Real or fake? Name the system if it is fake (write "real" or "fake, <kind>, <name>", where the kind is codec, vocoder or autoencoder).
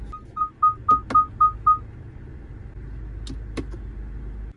real